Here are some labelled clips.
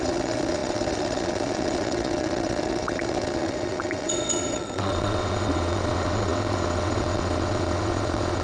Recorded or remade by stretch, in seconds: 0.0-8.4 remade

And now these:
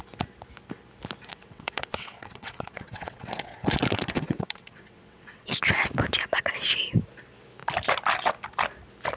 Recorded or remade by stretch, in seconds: 0.0-1.3 recorded; 1.3-5.6 remade; 5.6-9.2 recorded

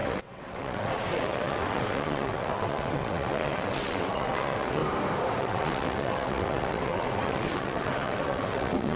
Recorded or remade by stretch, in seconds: 0.0-4.8 remade; 4.8-5.4 recorded; 5.4-9.0 remade

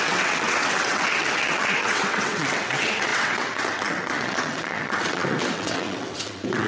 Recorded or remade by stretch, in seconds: 0.0-6.7 remade

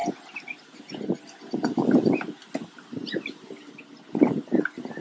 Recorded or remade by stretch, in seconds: 0.0-5.0 recorded

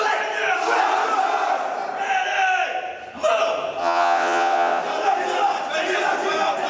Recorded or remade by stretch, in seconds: 0.0-3.8 recorded; 3.8-4.8 remade; 4.8-6.7 recorded

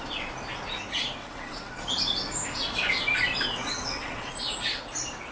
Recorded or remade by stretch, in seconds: 0.0-1.2 recorded; 1.2-1.7 remade; 1.7-3.6 recorded; 3.6-4.3 remade; 4.3-5.3 recorded

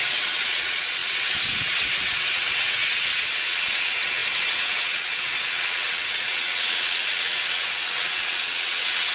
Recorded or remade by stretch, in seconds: 0.0-9.1 remade